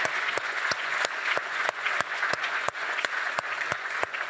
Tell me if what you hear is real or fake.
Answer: fake